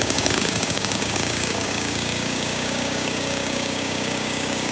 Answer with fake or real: fake